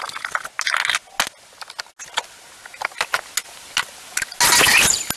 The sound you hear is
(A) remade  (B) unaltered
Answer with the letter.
B